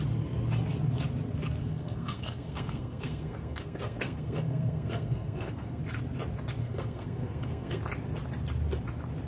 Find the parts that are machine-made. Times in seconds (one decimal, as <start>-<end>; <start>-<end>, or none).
1.6-5.8; 6.6-7.8